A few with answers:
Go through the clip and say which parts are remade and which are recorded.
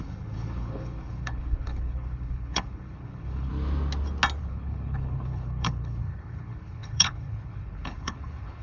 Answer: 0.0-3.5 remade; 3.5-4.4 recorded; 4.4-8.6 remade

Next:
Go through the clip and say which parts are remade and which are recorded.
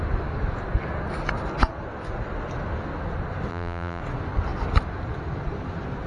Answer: 0.0-3.5 recorded; 3.5-4.0 remade; 4.0-6.1 recorded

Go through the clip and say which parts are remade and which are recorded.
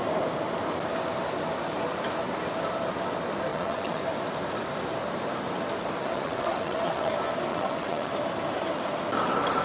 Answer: 0.0-3.5 recorded; 3.5-4.0 remade; 4.0-6.0 recorded; 6.0-7.1 remade; 7.1-7.5 recorded; 7.5-8.1 remade; 8.1-9.6 recorded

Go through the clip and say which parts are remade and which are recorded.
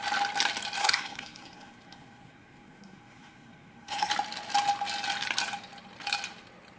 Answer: 0.0-0.8 recorded; 0.8-4.1 remade; 4.1-6.8 recorded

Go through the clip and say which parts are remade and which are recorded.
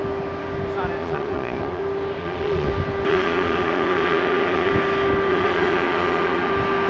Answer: 0.0-1.0 recorded; 1.0-1.8 remade; 1.8-2.2 recorded; 2.2-2.7 remade; 2.7-3.1 recorded; 3.1-4.7 remade; 4.7-5.3 recorded; 5.3-6.5 remade; 6.5-6.9 recorded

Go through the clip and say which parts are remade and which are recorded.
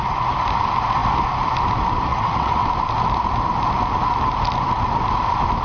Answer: 0.0-2.1 recorded; 2.1-2.7 remade; 2.7-5.6 recorded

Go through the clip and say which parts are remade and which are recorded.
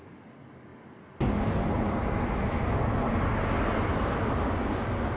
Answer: 0.0-5.2 recorded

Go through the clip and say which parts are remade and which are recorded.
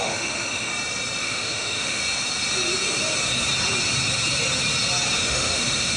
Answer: 0.0-0.7 remade; 0.7-1.2 recorded; 1.2-2.0 remade; 2.0-5.2 recorded; 5.2-6.0 remade